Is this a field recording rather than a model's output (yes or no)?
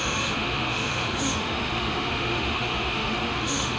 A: no